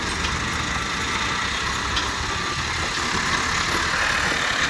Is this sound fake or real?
real